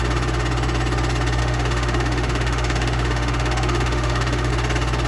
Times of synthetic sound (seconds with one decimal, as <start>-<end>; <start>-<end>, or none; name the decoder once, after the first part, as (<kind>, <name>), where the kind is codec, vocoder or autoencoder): 1.4-4.5 (autoencoder, DAC-VAE)